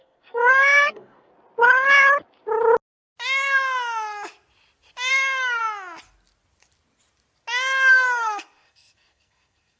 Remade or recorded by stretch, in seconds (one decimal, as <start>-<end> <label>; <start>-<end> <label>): 0.0-1.3 remade; 1.3-5.1 recorded; 5.1-5.6 remade; 5.6-7.9 recorded; 7.9-9.8 remade